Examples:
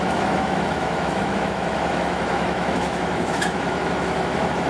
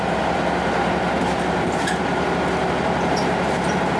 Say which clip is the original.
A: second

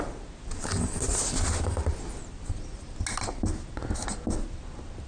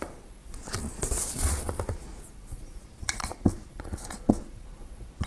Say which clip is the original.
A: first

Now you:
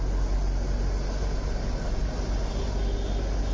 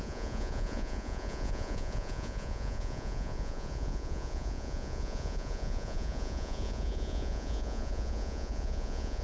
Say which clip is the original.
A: first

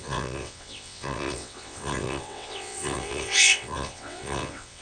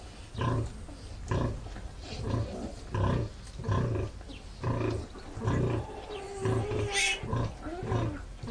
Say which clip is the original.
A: second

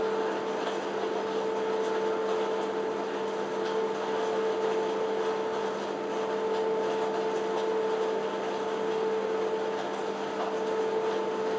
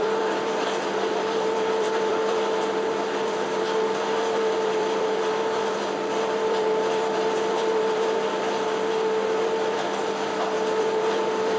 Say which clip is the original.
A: first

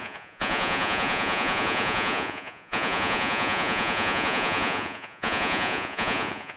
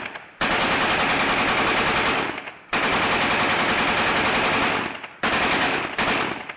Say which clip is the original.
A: second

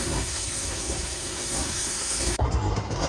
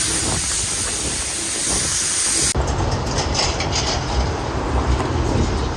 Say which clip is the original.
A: second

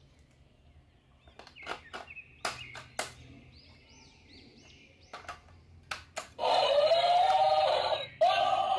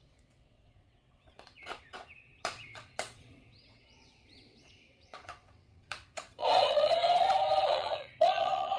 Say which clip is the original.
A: first